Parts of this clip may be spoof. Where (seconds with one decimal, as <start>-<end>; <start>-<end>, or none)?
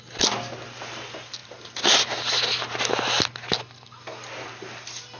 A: none